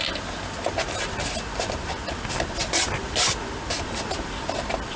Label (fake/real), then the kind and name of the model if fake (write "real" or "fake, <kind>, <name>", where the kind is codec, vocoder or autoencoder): real